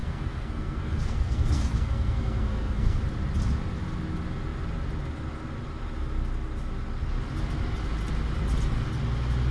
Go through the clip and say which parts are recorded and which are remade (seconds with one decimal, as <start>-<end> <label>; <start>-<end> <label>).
0.0-3.0 remade; 3.0-9.5 recorded